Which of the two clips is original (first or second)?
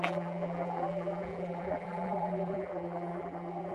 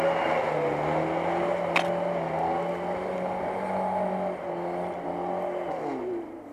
second